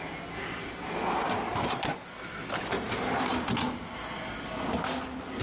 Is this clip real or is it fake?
real